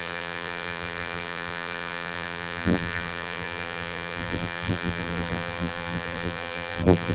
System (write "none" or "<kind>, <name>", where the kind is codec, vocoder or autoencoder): vocoder, BigVGAN v2